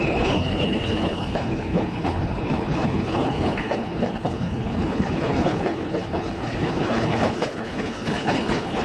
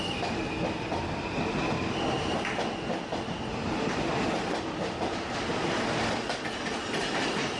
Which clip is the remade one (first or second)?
first